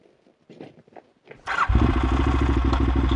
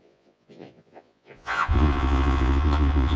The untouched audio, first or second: first